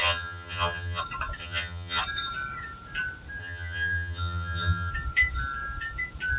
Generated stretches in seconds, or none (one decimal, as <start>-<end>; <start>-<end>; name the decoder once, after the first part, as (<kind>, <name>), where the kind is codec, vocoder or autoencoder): 0.0-1.0 (vocoder, HiFi-GAN); 1.4-2.0; 3.4-4.9